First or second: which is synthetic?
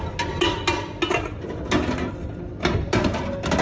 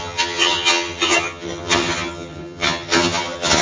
second